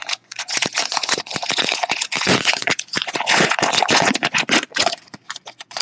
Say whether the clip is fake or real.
fake